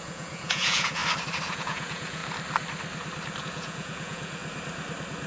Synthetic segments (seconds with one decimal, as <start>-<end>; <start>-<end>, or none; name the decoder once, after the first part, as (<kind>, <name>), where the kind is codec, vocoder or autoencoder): 0.0-1.0 (vocoder, Vocos); 1.5-2.2; 3.4-4.4